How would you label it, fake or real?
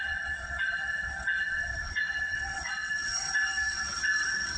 fake